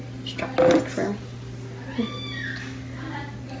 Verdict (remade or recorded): recorded